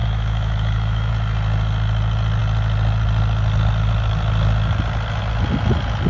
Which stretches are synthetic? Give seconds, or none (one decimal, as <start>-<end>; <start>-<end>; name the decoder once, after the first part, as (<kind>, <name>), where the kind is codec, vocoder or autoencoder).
0.0-1.1 (autoencoder, DAC-VAE)